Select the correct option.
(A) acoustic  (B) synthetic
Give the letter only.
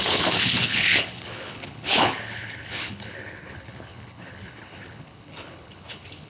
B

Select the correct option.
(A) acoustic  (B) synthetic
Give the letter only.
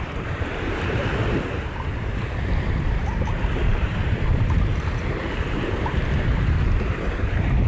B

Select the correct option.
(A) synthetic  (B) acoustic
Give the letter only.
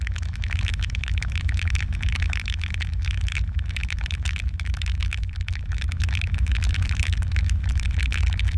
A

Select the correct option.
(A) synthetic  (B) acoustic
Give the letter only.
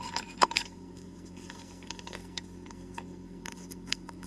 A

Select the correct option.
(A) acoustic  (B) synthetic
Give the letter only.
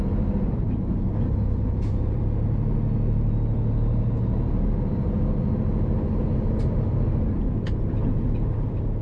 A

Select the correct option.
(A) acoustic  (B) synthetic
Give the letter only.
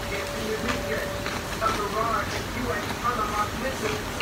A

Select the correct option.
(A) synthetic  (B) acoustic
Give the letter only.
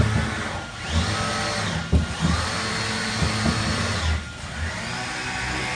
B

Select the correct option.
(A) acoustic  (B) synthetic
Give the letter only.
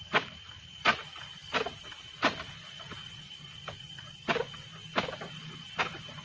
A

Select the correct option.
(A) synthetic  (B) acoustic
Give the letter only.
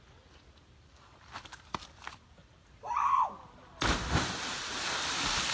B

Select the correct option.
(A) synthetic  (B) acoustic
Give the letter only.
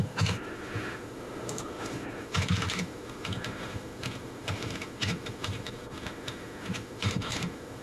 A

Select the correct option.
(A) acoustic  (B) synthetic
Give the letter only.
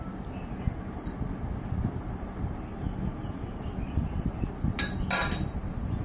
A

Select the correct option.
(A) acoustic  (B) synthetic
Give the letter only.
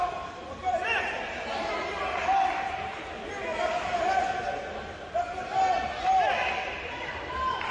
A